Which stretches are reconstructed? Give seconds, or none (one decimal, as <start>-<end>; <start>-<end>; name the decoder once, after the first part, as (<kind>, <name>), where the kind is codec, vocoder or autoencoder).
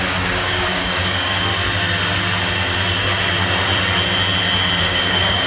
0.0-1.5 (codec, DAC); 4.8-5.5